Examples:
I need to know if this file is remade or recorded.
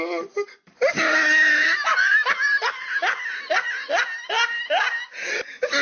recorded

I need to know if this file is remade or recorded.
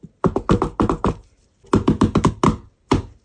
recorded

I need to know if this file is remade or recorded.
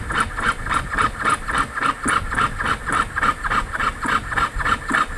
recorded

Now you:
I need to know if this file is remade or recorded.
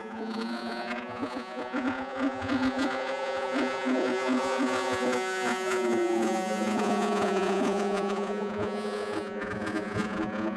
remade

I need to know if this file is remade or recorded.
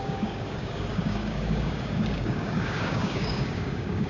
remade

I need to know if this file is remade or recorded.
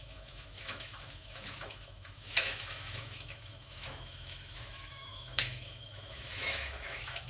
remade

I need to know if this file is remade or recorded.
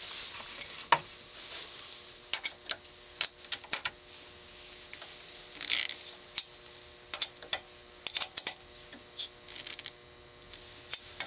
recorded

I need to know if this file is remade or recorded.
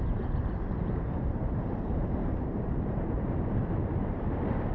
remade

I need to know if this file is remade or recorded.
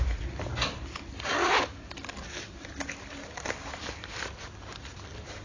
recorded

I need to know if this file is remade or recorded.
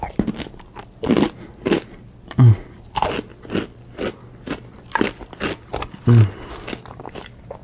recorded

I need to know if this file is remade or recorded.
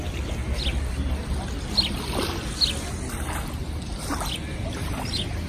recorded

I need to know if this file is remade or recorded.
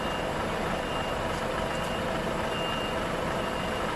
recorded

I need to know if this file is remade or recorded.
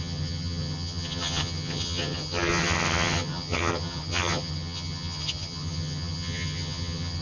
remade